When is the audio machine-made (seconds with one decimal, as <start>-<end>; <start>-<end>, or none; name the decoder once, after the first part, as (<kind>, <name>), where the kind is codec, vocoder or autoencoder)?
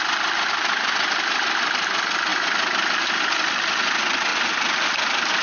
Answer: none